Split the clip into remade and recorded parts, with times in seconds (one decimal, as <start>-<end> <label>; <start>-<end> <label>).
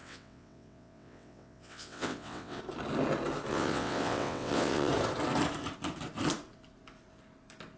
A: 0.0-2.6 remade; 2.6-3.5 recorded; 3.5-4.9 remade; 4.9-7.8 recorded